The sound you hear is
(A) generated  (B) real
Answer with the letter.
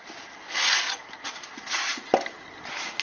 B